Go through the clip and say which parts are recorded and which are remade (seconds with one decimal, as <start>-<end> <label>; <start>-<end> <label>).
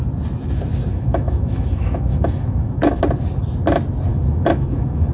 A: 0.0-0.9 recorded; 0.9-3.0 remade; 3.0-4.1 recorded; 4.1-5.1 remade